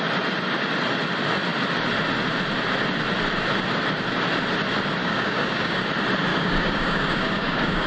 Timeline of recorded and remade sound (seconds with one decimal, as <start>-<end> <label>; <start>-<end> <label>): 0.0-5.0 recorded; 5.0-5.8 remade; 5.8-6.3 recorded; 6.3-7.9 remade